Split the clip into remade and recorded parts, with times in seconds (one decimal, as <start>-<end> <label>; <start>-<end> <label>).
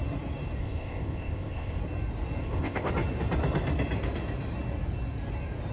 0.0-0.6 recorded; 0.6-1.8 remade; 1.8-2.4 recorded; 2.4-2.9 remade; 2.9-5.7 recorded